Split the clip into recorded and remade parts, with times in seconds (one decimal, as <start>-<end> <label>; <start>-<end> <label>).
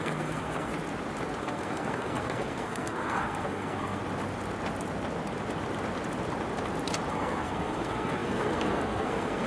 0.0-0.7 remade; 0.7-1.4 recorded; 1.4-4.0 remade; 4.0-7.1 recorded; 7.1-9.5 remade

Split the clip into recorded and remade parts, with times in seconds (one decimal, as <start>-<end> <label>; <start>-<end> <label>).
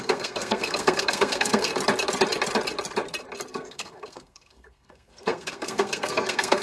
0.0-1.7 remade; 1.7-3.5 recorded; 3.5-6.6 remade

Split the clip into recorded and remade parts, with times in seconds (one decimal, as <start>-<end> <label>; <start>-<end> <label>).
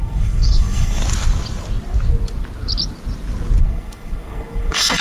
0.0-1.0 remade; 1.0-3.6 recorded; 3.6-5.0 remade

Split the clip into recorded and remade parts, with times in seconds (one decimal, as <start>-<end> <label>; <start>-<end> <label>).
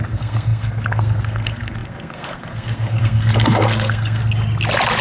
0.0-4.2 remade; 4.2-5.0 recorded